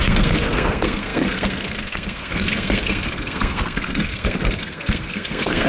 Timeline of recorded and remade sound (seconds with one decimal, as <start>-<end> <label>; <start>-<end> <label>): 0.0-5.7 remade